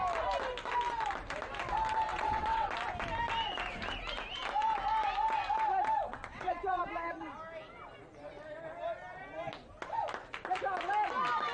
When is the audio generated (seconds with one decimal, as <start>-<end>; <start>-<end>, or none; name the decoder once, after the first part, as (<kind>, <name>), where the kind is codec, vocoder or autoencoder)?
2.1-2.7 (vocoder, WaveNeXt); 6.1-6.8